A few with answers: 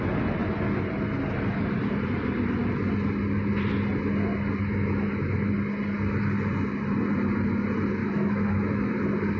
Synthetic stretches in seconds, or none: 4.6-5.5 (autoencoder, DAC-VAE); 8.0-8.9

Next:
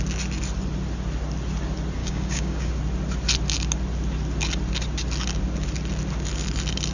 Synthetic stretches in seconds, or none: 2.0-2.7 (codec, DAC)

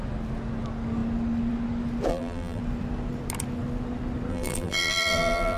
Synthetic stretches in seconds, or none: 2.1-2.6 (vocoder, BigVGAN v2); 4.3-5.6

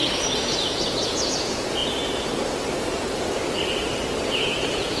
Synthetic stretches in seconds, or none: 0.0-1.8 (vocoder, Vocos); 4.2-5.0

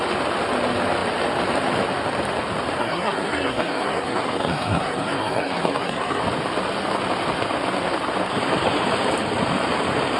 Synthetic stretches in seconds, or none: 2.8-6.2 (codec, SNAC)

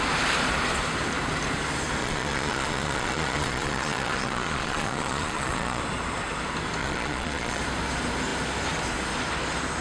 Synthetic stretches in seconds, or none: 2.0-5.8 (vocoder, Vocos); 6.8-7.6